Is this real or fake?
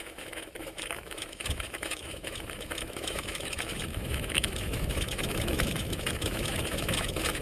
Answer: fake